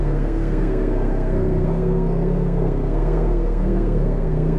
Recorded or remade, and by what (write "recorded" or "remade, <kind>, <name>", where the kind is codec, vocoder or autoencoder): remade, codec, SNAC